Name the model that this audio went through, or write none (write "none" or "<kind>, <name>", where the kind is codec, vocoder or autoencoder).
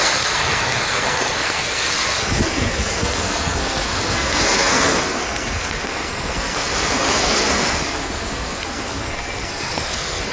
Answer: codec, SNAC